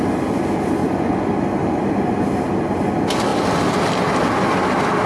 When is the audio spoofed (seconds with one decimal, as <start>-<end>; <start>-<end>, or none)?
0.8-1.3